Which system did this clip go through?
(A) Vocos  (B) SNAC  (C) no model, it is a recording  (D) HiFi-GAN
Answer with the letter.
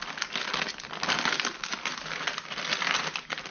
C